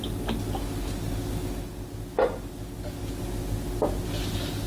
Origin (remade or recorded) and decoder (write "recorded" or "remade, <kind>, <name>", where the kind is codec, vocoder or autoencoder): recorded